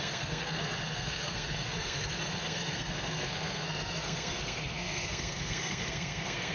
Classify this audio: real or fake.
fake